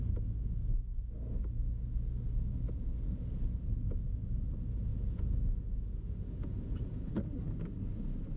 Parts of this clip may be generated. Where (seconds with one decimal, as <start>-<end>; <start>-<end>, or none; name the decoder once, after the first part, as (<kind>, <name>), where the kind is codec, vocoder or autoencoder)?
4.9-7.1 (vocoder, Vocos)